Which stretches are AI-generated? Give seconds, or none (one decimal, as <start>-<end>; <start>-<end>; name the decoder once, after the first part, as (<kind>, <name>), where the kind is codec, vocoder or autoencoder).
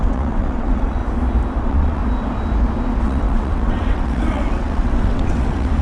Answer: 0.0-1.0 (vocoder, WaveNeXt); 1.6-2.0; 3.0-5.8